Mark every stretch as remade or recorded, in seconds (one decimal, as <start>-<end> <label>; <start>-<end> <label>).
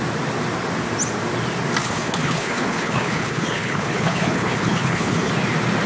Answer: 0.0-1.8 recorded; 1.8-5.3 remade; 5.3-5.9 recorded